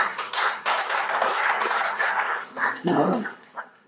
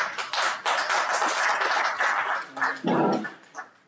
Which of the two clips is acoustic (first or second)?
second